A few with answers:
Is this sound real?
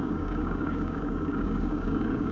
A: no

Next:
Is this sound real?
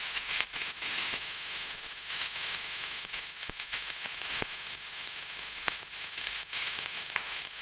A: no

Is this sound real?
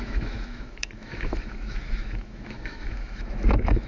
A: no